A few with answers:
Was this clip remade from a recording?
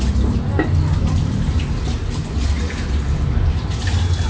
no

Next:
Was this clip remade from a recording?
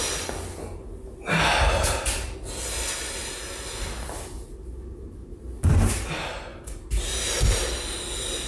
no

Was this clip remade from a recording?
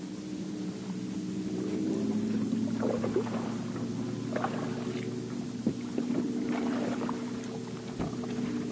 no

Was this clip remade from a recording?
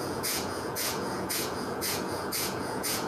yes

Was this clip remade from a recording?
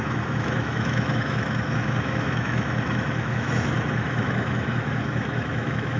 yes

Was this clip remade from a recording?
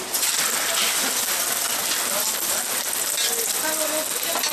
no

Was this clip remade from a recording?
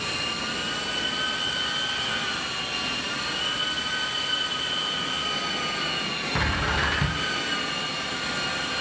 no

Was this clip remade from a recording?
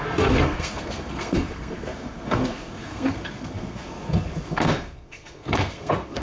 yes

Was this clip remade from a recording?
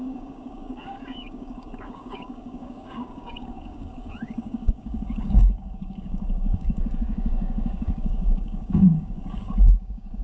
yes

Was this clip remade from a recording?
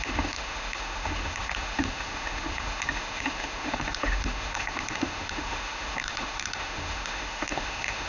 yes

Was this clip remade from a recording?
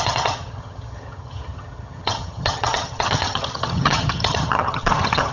yes